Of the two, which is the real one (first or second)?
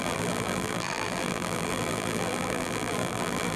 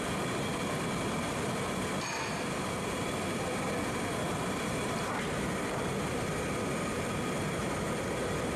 second